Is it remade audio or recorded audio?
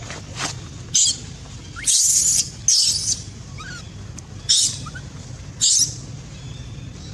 recorded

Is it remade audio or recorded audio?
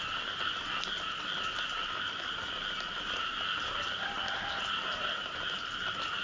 recorded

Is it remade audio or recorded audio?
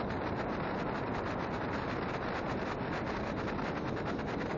recorded